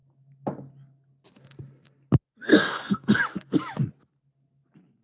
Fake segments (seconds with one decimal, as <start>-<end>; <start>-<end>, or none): 2.5-3.2